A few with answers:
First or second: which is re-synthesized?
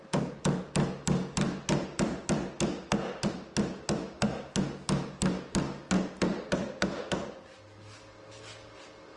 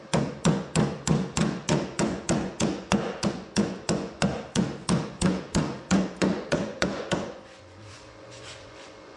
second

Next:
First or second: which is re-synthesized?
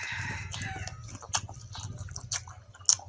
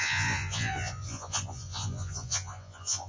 second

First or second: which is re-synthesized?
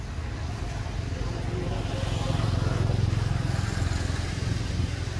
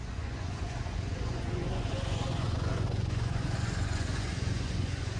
second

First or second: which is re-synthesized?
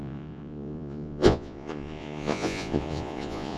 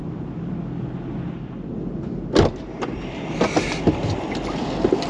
first